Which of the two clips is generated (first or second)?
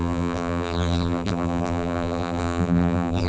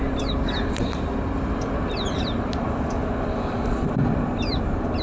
first